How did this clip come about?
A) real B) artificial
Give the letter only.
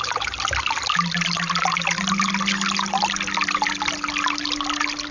A